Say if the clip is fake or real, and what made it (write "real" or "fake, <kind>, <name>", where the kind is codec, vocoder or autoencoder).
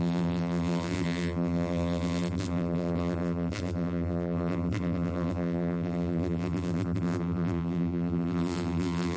fake, vocoder, BigVGAN v2